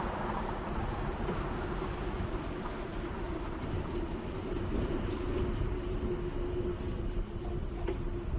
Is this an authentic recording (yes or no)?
yes